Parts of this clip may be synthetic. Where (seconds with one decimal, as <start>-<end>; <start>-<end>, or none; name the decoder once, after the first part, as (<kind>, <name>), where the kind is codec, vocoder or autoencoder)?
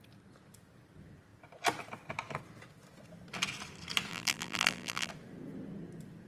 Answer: 4.1-5.1 (vocoder, BigVGAN v2)